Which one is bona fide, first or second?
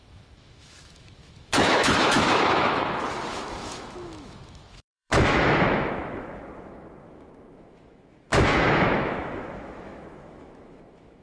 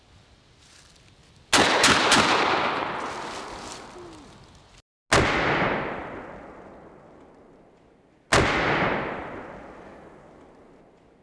second